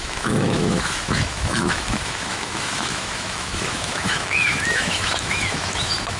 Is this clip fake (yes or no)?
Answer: yes